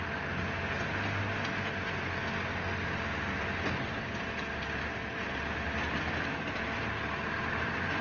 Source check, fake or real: real